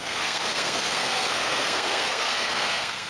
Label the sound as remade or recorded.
remade